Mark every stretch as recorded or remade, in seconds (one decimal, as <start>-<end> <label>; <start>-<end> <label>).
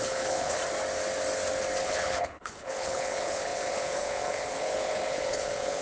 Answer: 0.0-0.6 remade; 0.6-1.8 recorded; 1.8-5.8 remade